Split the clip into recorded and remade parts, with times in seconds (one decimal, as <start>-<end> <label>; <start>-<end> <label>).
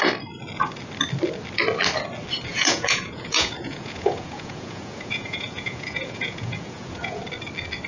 0.0-2.5 recorded; 2.5-7.2 remade; 7.2-7.9 recorded